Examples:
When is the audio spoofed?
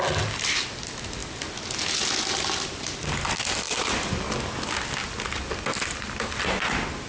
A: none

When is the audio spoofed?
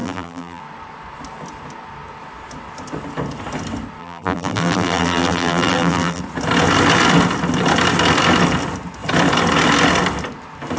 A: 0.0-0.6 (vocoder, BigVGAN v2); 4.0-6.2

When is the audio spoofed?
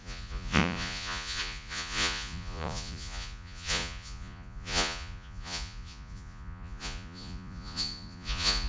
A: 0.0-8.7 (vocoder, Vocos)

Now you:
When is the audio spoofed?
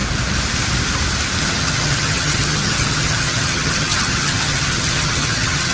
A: 1.4-5.7 (vocoder, HiFi-GAN)